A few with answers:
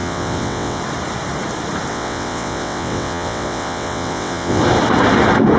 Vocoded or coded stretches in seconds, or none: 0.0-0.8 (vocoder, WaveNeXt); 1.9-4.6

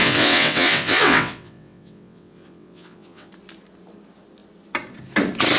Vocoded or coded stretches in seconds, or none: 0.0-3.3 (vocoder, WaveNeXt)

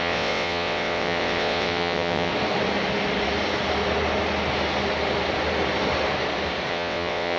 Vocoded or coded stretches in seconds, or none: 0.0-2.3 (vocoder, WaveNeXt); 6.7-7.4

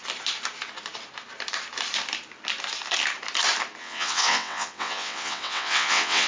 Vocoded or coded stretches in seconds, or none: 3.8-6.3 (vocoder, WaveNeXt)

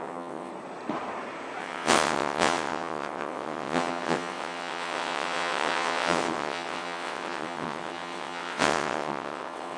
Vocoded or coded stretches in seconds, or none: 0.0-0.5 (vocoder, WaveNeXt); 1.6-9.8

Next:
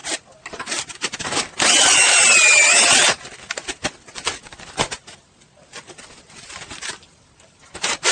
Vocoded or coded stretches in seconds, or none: none

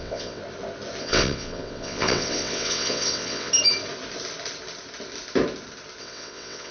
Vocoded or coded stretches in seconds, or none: 0.0-0.4 (vocoder, WaveNeXt); 1.0-3.5; 6.0-6.7

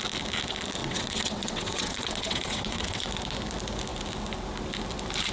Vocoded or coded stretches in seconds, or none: 0.8-3.1 (vocoder, WaveNeXt)